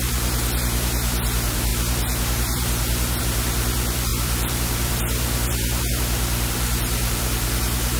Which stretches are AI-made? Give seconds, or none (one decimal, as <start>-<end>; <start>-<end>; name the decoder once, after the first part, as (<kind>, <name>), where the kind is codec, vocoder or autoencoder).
0.0-8.0 (vocoder, BigVGAN v2)